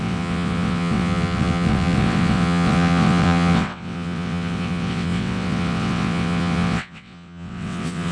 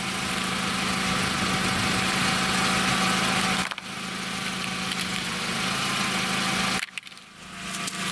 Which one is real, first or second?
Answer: second